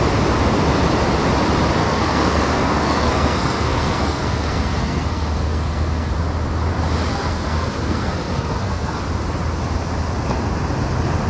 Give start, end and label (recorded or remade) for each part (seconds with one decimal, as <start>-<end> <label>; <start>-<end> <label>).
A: 0.0-1.8 recorded; 1.8-6.1 remade; 6.1-7.1 recorded; 7.1-9.0 remade; 9.0-11.3 recorded